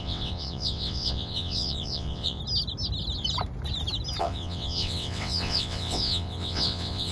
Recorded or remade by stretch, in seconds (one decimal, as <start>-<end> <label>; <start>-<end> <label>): 0.0-2.4 remade; 2.4-4.2 recorded; 4.2-7.1 remade